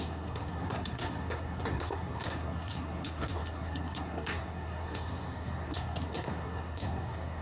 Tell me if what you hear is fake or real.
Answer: fake